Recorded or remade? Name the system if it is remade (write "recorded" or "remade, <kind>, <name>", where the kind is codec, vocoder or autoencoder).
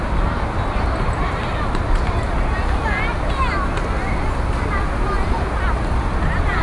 recorded